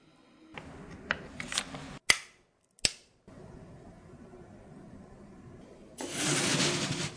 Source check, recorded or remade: recorded